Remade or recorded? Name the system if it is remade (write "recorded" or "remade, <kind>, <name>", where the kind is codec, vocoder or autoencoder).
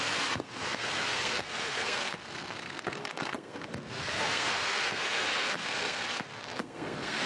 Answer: remade, codec, SNAC